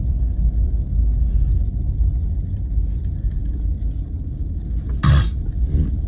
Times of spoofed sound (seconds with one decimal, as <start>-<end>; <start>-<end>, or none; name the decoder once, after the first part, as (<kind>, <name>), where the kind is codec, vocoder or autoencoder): none